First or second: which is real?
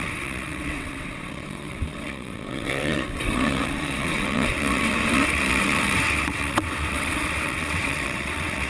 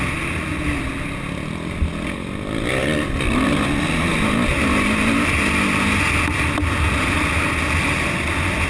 second